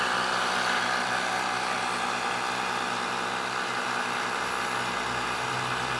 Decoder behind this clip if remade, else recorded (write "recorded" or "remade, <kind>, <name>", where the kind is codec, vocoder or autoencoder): recorded